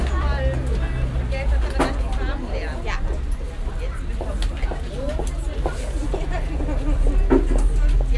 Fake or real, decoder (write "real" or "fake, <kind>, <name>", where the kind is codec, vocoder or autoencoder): real